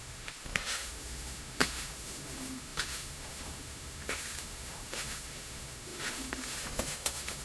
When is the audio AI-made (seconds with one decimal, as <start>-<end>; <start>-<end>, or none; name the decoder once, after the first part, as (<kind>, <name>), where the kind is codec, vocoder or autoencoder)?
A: 0.0-7.4 (autoencoder, DAC-VAE)